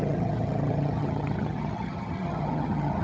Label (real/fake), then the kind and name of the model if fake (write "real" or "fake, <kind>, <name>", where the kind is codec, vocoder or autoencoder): fake, vocoder, HiFi-GAN